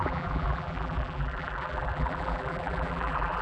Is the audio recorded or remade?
remade